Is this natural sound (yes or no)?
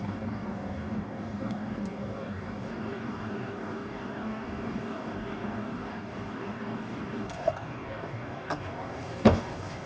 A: no